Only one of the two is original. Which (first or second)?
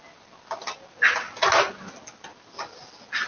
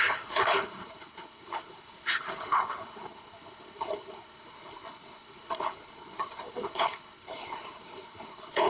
first